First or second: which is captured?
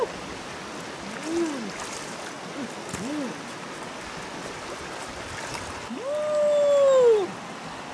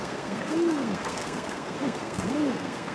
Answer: first